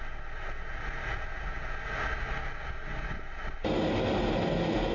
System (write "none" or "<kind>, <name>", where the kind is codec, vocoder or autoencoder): none